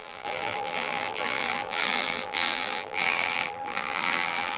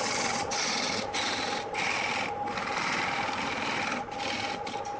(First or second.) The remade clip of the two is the first